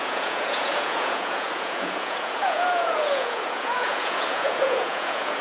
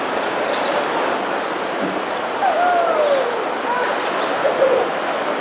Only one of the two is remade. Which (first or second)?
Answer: first